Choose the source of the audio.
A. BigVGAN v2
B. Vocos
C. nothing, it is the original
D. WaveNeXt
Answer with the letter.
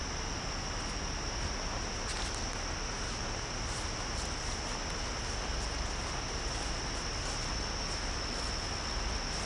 C